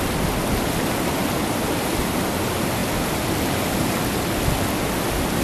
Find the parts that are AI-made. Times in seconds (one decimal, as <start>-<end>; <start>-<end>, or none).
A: none